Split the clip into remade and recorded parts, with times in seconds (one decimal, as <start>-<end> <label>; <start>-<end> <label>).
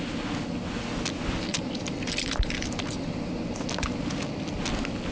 0.0-1.5 recorded; 1.5-3.3 remade; 3.3-5.1 recorded